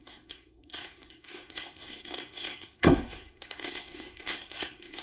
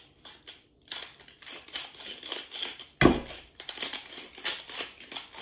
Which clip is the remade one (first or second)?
first